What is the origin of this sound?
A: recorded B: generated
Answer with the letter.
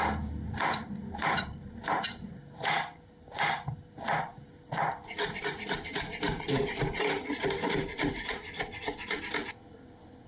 A